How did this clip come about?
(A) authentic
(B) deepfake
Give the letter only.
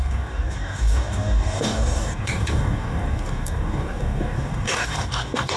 B